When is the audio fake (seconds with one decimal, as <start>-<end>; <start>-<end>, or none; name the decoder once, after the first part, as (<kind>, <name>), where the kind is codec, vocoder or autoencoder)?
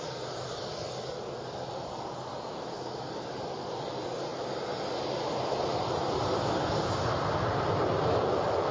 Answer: none